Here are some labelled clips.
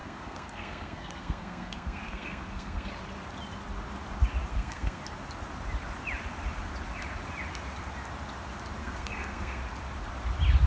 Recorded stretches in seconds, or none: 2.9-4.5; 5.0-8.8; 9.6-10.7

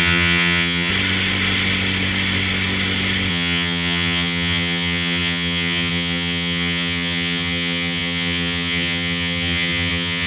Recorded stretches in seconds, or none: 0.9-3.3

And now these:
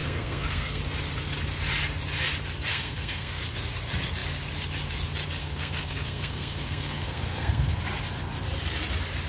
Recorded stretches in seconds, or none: 0.8-2.7; 3.4-5.4; 7.8-9.3

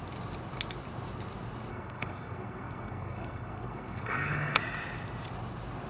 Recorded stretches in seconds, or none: 0.0-1.7; 4.6-5.9

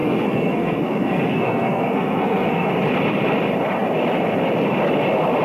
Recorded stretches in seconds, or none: 2.7-5.4